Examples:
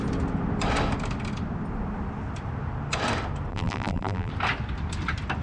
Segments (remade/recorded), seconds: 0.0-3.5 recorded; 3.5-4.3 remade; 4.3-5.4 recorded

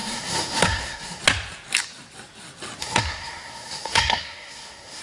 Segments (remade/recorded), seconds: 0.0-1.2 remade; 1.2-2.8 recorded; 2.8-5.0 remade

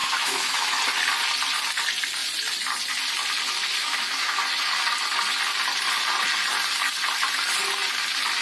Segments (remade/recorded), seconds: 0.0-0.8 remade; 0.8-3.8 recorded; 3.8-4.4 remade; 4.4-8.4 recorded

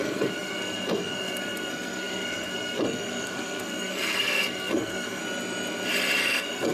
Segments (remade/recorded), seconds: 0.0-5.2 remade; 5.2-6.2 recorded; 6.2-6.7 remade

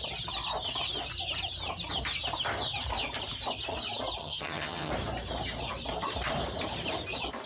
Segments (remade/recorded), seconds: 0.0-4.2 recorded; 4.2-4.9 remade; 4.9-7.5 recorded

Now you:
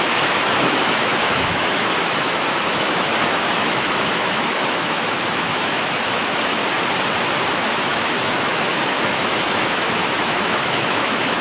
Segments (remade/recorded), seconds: 0.0-6.6 remade; 6.6-7.5 recorded; 7.5-11.4 remade

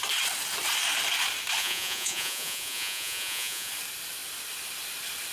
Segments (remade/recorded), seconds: 0.0-1.6 recorded; 1.6-3.7 remade; 3.7-5.3 recorded

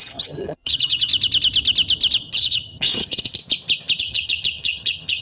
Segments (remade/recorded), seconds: 0.0-1.1 remade; 1.1-2.2 recorded; 2.2-3.4 remade; 3.4-4.0 recorded; 4.0-5.2 remade